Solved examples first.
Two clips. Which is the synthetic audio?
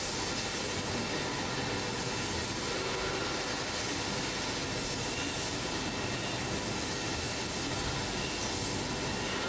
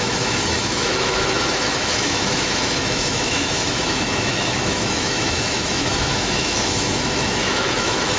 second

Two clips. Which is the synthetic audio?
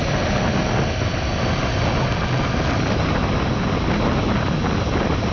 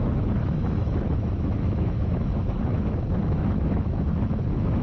second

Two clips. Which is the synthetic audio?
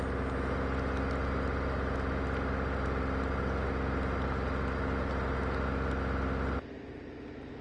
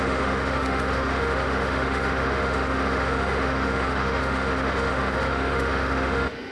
second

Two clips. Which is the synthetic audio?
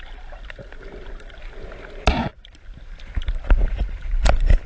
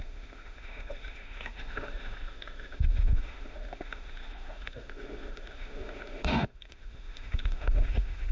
second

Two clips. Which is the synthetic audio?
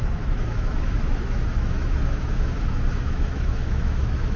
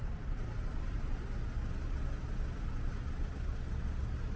first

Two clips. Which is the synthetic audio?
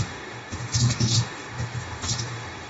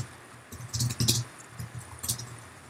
first